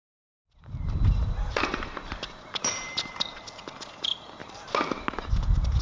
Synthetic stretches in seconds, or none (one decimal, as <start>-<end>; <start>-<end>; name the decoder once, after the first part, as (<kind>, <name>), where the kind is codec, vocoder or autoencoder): 1.2-3.4 (vocoder, BigVGAN v2); 4.4-5.0